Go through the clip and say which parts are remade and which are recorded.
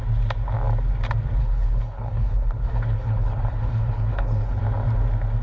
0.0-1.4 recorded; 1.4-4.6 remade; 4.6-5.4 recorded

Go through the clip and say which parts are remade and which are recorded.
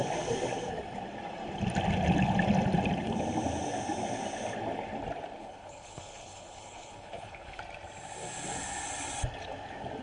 0.0-5.4 recorded; 5.4-7.6 remade; 7.6-10.0 recorded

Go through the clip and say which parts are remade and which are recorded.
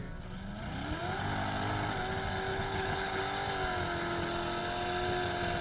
0.0-2.5 recorded; 2.5-3.2 remade; 3.2-5.6 recorded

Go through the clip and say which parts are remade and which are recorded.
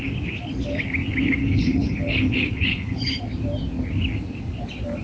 0.0-1.4 recorded; 1.4-3.2 remade; 3.2-5.0 recorded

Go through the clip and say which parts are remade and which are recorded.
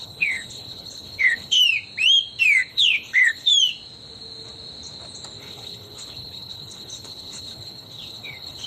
0.0-1.6 remade; 1.6-2.7 recorded; 2.7-3.5 remade; 3.5-5.4 recorded; 5.4-8.7 remade